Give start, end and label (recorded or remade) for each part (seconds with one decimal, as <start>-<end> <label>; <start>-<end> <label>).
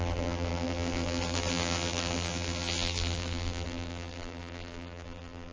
0.0-5.5 remade